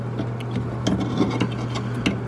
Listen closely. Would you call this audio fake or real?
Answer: real